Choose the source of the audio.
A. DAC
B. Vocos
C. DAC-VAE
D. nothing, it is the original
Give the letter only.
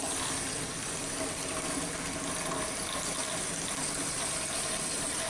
D